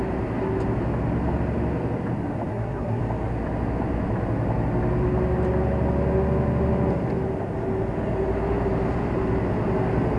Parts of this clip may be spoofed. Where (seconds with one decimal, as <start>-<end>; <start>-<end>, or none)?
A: 2.5-3.0